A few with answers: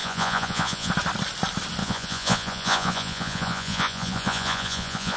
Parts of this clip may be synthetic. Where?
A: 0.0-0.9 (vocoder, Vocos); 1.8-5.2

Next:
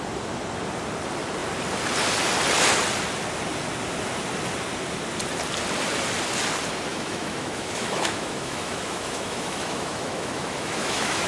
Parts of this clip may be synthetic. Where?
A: 6.9-11.3 (autoencoder, DAC-VAE)

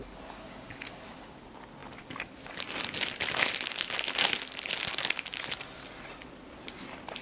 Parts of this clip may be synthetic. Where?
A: none

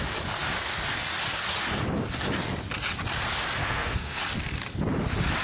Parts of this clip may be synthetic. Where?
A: 3.6-4.2 (codec, SNAC)